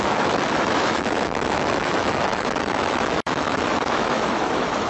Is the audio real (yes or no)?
no